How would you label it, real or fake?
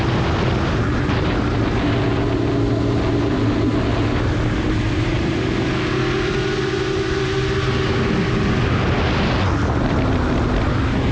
real